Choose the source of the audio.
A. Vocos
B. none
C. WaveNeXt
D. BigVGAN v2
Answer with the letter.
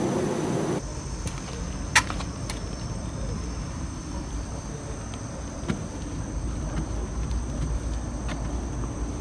B